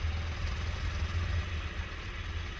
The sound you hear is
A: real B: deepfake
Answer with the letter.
A